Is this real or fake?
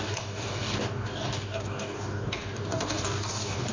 fake